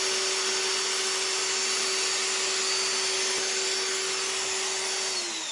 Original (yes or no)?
yes